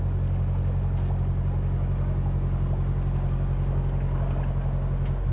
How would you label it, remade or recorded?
recorded